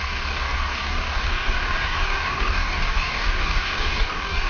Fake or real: fake